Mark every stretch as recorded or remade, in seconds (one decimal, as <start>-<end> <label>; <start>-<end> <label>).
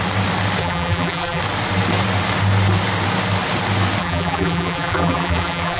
0.0-0.6 recorded; 0.6-1.4 remade; 1.4-4.0 recorded; 4.0-5.8 remade